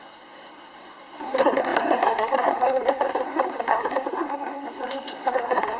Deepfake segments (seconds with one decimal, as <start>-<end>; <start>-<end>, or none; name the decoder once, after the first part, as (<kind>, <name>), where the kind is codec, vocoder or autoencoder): 0.0-5.8 (codec, SNAC)